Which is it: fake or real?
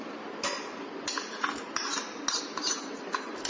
real